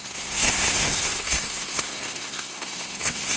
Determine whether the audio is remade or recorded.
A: remade